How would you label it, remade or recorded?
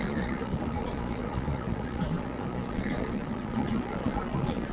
remade